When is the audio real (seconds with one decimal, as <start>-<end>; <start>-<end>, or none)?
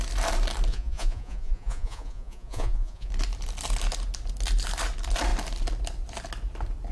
0.0-0.7; 3.1-6.9